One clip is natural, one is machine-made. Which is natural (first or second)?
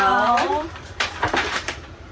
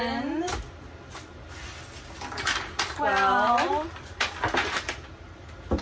second